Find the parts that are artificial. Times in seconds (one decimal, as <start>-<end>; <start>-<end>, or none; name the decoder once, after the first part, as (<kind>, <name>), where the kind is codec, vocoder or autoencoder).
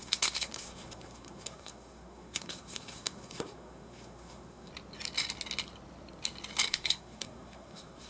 0.0-4.7 (codec, SNAC); 6.7-8.1